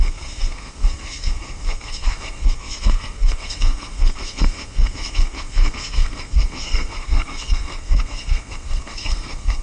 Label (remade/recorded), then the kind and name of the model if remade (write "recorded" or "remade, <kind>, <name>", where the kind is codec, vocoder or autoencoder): remade, codec, SNAC